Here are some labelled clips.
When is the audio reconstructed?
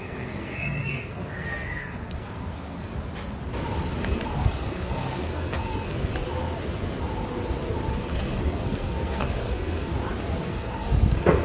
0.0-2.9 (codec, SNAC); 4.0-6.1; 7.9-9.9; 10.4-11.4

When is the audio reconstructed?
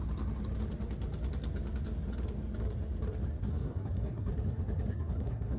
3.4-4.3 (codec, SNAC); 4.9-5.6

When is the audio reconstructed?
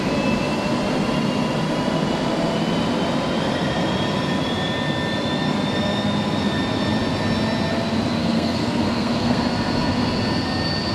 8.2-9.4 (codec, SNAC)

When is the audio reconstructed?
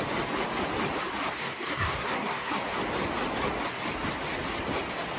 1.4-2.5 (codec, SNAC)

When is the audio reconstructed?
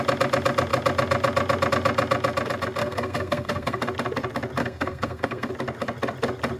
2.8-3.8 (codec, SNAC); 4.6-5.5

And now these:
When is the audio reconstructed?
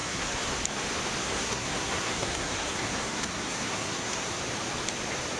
0.0-0.5 (codec, SNAC); 1.2-4.4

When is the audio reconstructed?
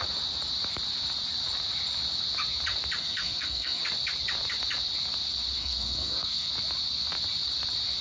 3.0-3.8 (codec, SNAC); 5.6-6.5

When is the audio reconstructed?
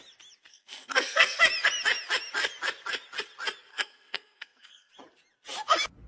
0.5-1.4 (codec, SNAC); 3.7-4.9